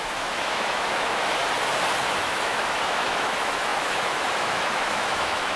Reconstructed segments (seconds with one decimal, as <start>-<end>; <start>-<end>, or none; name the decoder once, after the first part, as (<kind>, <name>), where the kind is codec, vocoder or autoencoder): 0.0-1.4 (autoencoder, DAC-VAE); 2.0-5.6